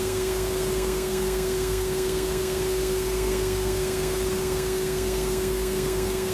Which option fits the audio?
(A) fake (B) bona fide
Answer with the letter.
A